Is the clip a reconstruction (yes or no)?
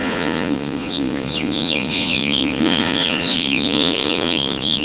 yes